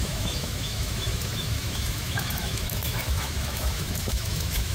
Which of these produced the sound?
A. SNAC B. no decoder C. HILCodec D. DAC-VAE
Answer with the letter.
D